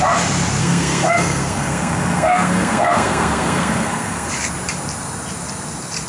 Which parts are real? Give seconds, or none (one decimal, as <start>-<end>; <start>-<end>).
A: 0.0-0.6; 4.3-6.1